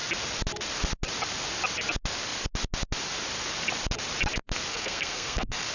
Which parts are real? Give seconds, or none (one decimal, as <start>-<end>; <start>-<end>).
0.0-4.7